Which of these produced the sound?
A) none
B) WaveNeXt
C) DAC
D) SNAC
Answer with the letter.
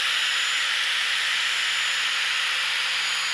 A